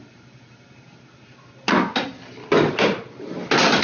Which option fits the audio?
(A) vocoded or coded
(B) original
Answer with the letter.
B